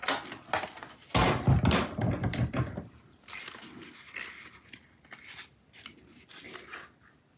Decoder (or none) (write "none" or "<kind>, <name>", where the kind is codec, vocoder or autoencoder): none